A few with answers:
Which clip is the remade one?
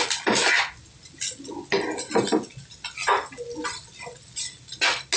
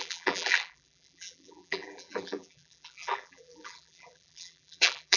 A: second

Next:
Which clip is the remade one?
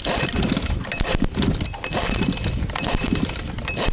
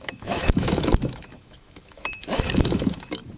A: second